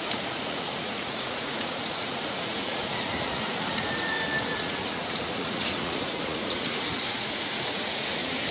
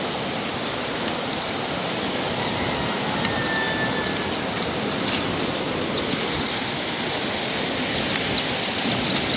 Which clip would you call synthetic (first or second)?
first